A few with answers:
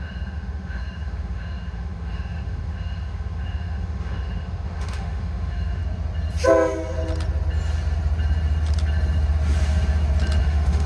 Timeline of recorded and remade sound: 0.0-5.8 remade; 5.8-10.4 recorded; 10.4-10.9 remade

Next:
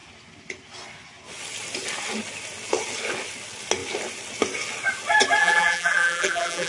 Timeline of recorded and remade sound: 0.0-5.4 recorded; 5.4-6.7 remade

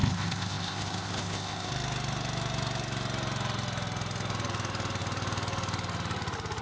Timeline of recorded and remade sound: 0.0-1.7 remade; 1.7-6.6 recorded